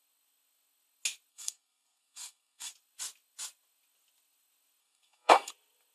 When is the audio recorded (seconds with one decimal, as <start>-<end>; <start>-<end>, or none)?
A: 0.0-1.3; 2.7-4.8; 5.5-5.9